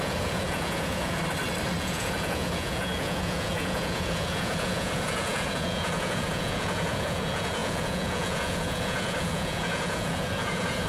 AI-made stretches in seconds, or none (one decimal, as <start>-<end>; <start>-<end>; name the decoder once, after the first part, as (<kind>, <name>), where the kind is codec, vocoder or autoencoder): 0.0-1.2 (vocoder, Vocos); 1.8-10.9